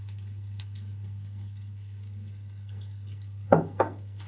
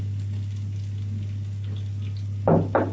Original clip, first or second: second